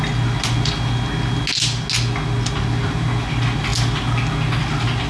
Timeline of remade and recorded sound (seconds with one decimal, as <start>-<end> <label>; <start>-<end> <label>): 0.0-5.1 recorded